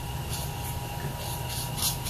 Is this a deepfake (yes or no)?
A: no